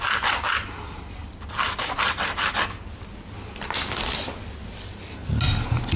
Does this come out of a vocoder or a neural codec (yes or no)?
no